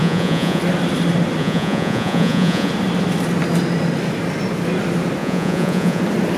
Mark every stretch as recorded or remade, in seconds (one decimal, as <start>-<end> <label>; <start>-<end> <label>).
0.0-0.6 remade; 0.6-1.4 recorded; 1.4-2.7 remade; 2.7-5.2 recorded; 5.2-6.0 remade; 6.0-6.4 recorded